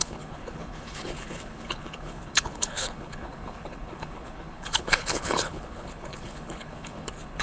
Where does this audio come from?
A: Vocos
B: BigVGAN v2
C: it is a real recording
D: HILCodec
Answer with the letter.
D